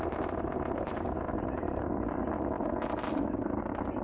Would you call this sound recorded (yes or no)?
yes